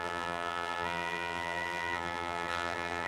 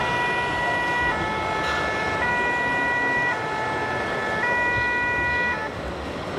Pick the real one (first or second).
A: second